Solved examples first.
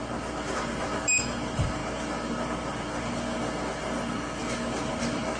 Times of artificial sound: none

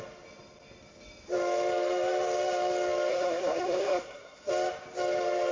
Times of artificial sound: 3.1-4.5 (codec, SNAC)